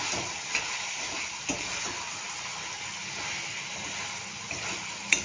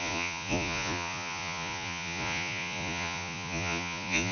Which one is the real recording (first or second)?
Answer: first